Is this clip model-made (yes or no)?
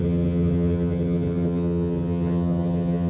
yes